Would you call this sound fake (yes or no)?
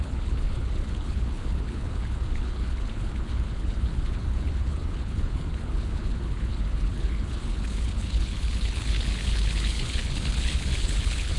yes